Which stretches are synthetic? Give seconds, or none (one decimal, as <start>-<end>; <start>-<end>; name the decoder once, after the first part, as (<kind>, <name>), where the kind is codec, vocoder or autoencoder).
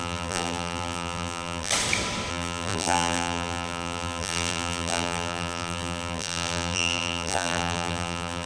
0.0-1.7 (vocoder, BigVGAN v2); 2.3-8.5